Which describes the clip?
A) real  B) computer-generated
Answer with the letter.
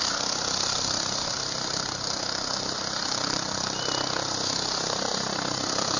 A